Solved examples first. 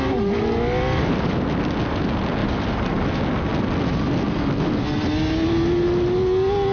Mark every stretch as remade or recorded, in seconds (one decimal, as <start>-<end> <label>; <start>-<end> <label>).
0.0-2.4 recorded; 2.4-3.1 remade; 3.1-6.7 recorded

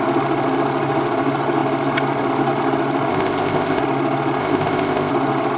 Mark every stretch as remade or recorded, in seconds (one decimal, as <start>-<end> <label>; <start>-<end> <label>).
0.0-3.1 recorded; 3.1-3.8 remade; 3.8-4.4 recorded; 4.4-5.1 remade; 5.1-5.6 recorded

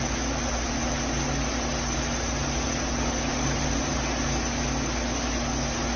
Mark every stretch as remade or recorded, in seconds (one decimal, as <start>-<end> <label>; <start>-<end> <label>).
0.0-3.3 recorded; 3.3-4.0 remade; 4.0-6.0 recorded

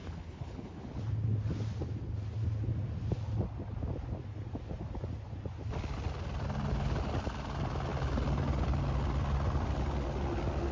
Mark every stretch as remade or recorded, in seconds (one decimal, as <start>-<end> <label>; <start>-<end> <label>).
0.0-0.8 remade; 0.8-10.7 recorded

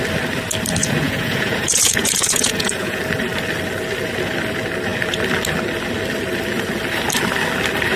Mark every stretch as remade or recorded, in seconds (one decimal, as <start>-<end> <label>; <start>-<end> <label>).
0.0-0.8 recorded; 0.8-3.0 remade; 3.0-8.0 recorded

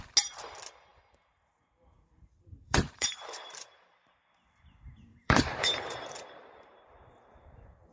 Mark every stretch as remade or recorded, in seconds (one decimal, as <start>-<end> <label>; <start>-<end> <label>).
0.0-0.9 recorded; 0.9-3.9 remade; 3.9-5.1 recorded; 5.1-6.7 remade; 6.7-7.9 recorded

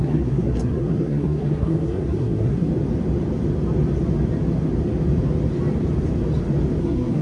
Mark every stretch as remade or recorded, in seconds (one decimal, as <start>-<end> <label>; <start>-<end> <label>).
0.0-2.7 remade; 2.7-6.8 recorded; 6.8-7.2 remade